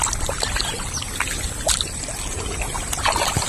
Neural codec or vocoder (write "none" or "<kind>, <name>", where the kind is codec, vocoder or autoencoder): none